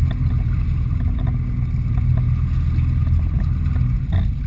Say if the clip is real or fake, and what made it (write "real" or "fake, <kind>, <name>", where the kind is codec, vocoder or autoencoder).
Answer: real